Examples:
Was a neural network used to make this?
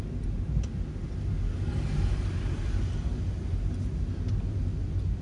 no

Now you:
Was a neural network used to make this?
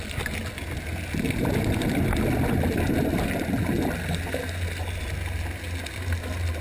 no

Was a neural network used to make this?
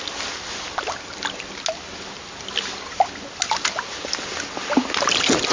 no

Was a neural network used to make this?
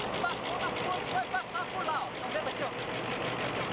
no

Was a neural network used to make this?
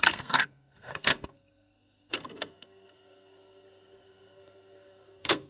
yes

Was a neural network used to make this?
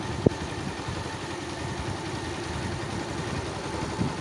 no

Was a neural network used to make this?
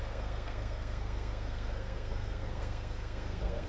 yes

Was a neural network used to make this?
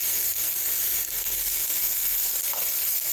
yes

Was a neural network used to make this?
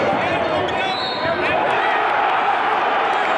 no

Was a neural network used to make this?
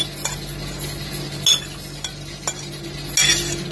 no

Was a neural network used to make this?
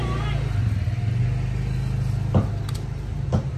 no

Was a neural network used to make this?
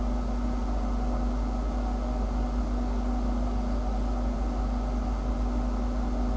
no